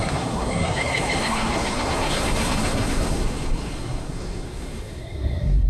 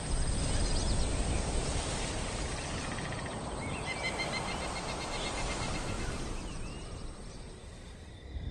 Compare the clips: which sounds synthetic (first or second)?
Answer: first